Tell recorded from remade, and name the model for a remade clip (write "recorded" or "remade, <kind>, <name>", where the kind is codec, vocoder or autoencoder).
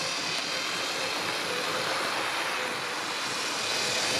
recorded